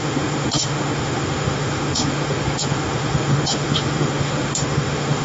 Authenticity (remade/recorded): remade